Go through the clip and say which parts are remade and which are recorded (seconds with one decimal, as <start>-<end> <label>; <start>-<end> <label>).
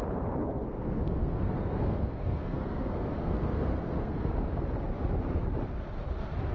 0.0-0.4 recorded; 0.4-4.3 remade; 4.3-6.5 recorded